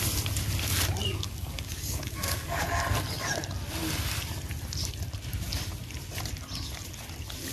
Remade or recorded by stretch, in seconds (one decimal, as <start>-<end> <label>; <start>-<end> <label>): 0.0-1.1 recorded; 1.1-2.8 remade; 2.8-7.5 recorded